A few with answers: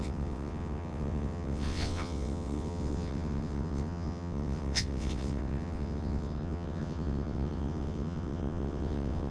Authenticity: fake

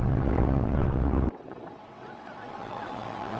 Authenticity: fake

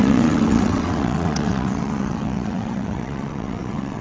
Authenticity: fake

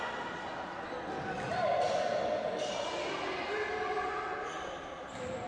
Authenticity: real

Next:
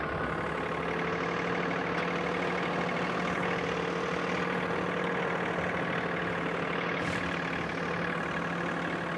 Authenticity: real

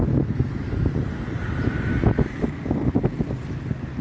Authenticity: real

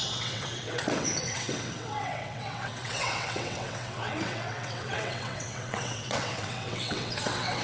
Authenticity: fake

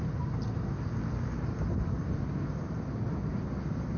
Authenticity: real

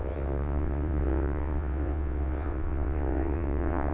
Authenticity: fake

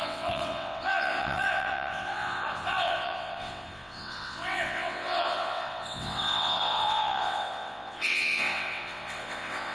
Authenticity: fake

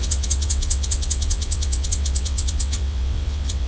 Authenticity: fake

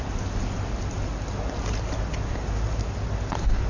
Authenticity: real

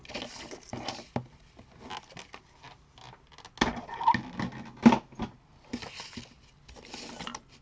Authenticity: real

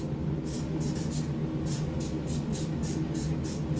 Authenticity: real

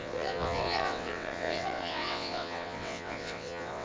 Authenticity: fake